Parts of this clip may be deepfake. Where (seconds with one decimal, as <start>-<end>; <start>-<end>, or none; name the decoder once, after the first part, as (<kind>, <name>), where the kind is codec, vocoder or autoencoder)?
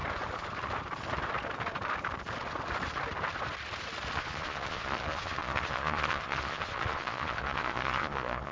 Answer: 4.1-8.5 (vocoder, Vocos)